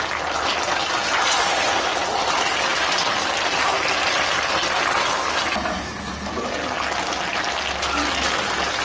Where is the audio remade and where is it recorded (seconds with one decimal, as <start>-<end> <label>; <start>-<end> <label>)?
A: 0.0-8.8 recorded